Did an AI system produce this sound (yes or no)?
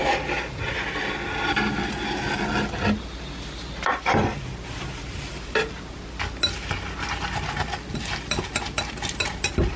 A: no